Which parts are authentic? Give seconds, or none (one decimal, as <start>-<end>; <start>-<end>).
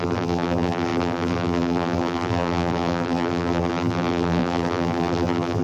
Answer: none